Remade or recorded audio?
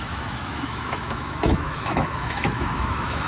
remade